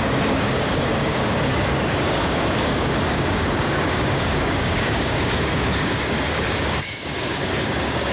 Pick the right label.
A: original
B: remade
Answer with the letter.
B